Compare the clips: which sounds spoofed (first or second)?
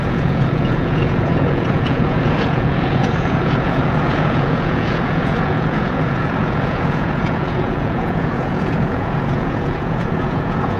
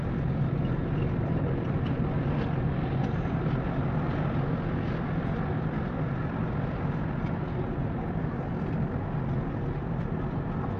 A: first